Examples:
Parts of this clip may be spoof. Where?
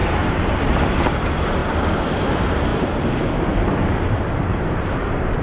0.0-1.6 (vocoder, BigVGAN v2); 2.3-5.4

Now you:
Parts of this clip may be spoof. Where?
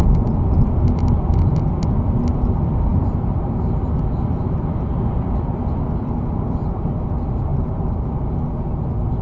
0.0-0.7 (vocoder, BigVGAN v2); 2.9-6.9; 7.5-8.2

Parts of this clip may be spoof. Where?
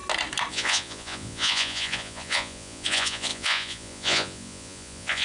0.5-5.2 (vocoder, Vocos)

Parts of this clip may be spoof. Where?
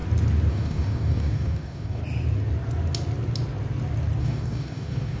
0.5-2.0 (codec, DAC); 4.2-5.2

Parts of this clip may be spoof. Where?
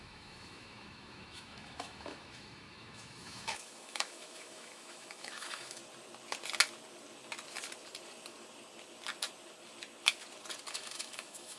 0.0-5.8 (autoencoder, DAC-VAE); 10.7-11.6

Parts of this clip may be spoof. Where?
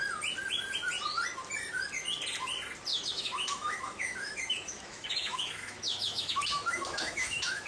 2.9-7.7 (autoencoder, DAC-VAE)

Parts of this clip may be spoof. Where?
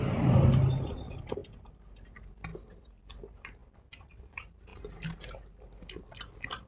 1.4-2.1 (vocoder, BigVGAN v2); 2.5-3.0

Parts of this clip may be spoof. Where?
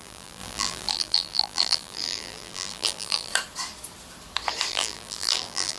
0.0-3.3 (vocoder, BigVGAN v2); 4.7-5.8